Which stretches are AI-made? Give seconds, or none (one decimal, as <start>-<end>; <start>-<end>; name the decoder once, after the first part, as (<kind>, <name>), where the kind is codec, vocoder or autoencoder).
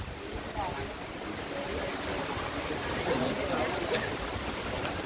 none